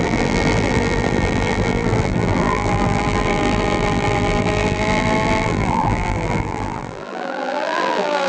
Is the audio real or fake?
fake